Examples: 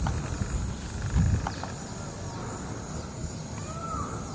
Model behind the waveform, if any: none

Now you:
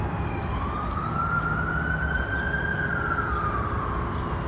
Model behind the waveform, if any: none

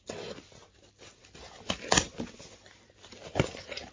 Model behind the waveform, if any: none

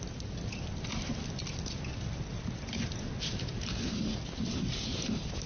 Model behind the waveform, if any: none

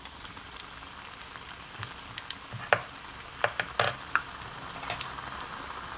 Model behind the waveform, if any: none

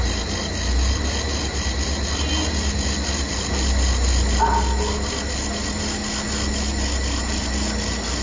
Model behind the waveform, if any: none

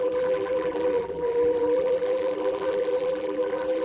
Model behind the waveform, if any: vocoder, BigVGAN v2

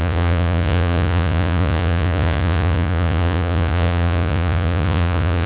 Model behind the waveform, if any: vocoder, Vocos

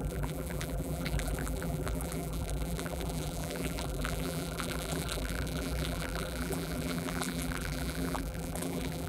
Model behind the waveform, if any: vocoder, BigVGAN v2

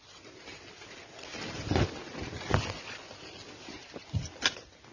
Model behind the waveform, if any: none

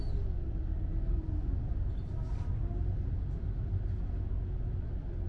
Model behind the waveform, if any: none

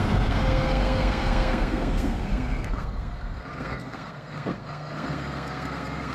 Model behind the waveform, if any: codec, SNAC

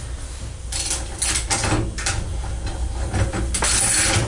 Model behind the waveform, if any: none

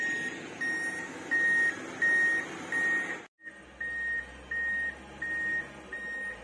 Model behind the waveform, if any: none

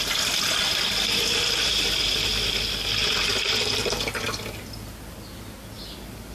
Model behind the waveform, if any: none